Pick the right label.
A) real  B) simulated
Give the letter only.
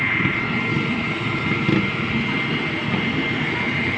A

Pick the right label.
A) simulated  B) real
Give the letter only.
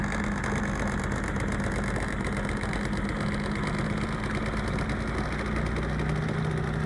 B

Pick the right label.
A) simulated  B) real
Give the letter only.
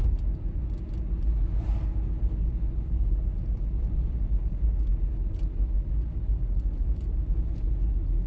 B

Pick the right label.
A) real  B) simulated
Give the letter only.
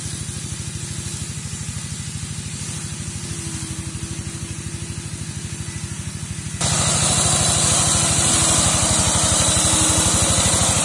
A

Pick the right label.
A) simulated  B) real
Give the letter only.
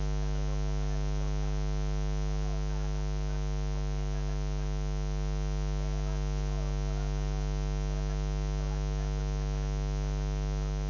B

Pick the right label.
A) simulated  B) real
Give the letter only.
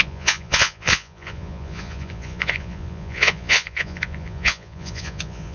A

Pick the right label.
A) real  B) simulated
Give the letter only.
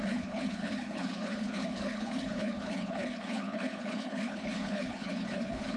B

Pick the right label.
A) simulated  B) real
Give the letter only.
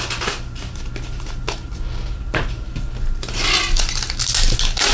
B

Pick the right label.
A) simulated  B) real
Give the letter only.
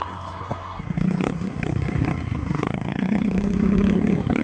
A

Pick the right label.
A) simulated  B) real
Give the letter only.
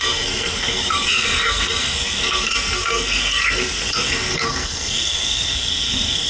A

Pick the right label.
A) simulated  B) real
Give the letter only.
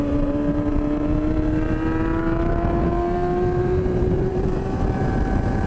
A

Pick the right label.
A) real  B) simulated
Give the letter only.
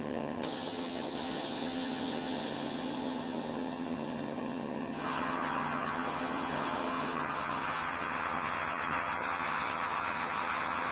B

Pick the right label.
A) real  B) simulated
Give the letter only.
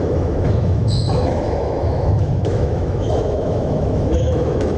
B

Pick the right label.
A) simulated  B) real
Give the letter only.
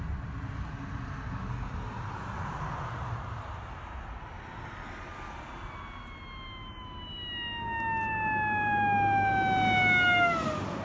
B